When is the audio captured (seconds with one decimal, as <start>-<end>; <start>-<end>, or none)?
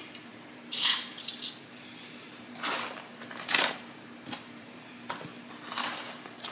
5.3-6.0